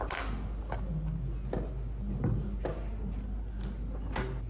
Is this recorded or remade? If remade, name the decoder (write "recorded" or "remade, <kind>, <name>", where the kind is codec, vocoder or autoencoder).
recorded